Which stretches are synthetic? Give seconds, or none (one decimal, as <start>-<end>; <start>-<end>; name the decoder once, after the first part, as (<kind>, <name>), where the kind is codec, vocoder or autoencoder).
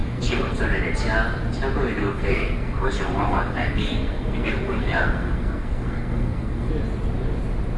0.0-0.6 (codec, SNAC); 2.0-6.7